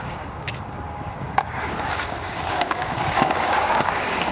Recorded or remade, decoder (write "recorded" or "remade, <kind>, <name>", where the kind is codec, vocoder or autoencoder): remade, codec, DAC